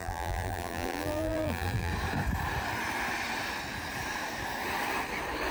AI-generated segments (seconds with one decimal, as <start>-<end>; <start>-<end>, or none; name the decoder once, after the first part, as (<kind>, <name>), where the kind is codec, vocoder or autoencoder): 0.0-1.9 (vocoder, BigVGAN v2)